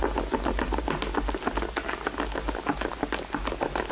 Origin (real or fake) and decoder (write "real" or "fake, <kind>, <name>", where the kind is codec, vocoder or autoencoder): real